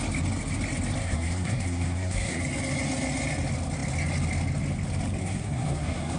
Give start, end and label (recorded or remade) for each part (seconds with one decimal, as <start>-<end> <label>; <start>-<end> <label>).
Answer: 0.0-1.0 recorded; 1.0-2.4 remade; 2.4-5.2 recorded; 5.2-6.2 remade